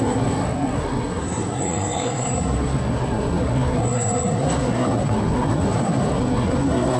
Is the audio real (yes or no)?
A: no